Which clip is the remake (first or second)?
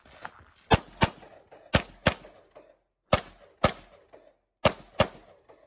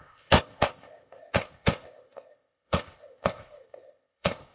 second